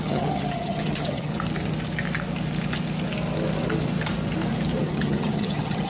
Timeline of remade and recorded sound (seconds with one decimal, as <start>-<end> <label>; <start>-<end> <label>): 0.0-1.3 remade; 1.3-4.8 recorded; 4.8-5.9 remade